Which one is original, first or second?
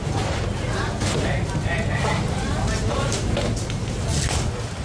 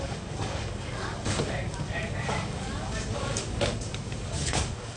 first